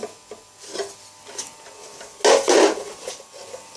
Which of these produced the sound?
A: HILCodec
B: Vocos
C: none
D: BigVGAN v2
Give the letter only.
C